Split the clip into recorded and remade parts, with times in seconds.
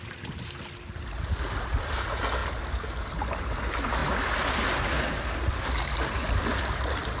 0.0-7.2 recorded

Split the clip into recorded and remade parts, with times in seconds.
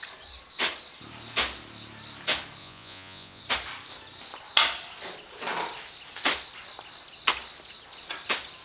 0.0-2.6 recorded; 2.6-3.4 remade; 3.4-8.6 recorded